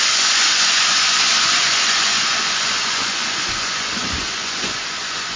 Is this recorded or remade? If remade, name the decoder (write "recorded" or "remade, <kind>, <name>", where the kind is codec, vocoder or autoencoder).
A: remade, vocoder, Vocos